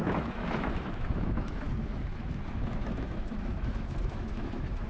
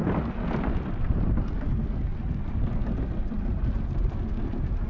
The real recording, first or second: second